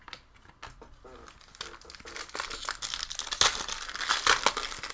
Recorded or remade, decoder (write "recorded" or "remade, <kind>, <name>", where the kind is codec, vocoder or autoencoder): recorded